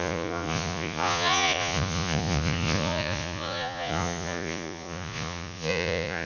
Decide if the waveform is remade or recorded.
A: remade